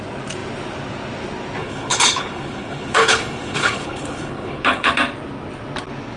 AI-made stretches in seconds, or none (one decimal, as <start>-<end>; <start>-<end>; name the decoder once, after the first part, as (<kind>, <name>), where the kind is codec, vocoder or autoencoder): 1.6-4.9 (codec, HILCodec)

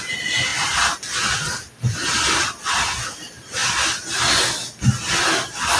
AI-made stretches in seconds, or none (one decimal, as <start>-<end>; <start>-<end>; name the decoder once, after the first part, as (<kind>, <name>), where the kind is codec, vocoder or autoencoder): none